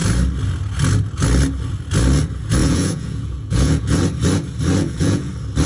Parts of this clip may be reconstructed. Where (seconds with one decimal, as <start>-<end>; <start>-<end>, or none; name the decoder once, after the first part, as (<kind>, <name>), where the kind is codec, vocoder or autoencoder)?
2.6-4.0 (vocoder, Vocos); 4.8-5.3